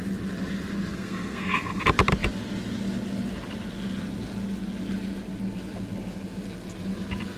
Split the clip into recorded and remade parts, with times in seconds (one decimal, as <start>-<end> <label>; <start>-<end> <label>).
0.0-0.9 recorded; 0.9-1.8 remade; 1.8-7.4 recorded